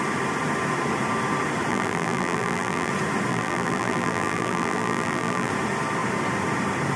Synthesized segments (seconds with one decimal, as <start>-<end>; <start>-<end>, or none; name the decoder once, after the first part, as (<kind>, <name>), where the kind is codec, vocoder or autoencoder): 1.7-2.9 (vocoder, BigVGAN v2); 3.3-5.5